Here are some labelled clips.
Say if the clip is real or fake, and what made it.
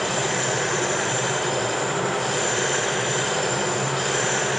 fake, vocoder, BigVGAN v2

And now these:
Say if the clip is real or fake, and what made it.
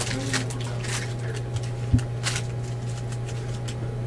real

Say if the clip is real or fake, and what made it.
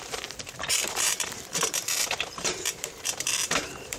fake, vocoder, BigVGAN v2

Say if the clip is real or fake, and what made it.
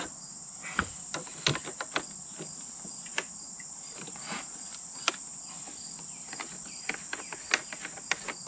real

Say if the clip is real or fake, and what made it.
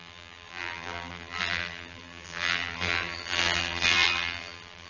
fake, vocoder, BigVGAN v2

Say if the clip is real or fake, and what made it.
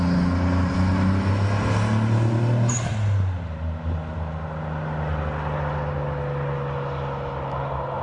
real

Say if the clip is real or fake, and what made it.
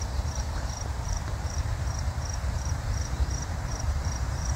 fake, vocoder, BigVGAN v2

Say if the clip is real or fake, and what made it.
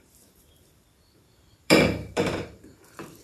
fake, vocoder, BigVGAN v2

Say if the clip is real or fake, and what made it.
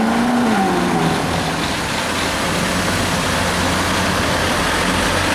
real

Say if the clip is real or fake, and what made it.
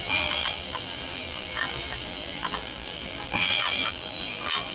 fake, vocoder, BigVGAN v2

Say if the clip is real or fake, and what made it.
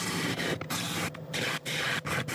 fake, vocoder, BigVGAN v2